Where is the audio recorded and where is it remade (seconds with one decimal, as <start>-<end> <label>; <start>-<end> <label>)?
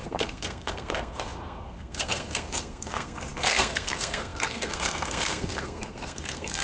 0.0-6.6 remade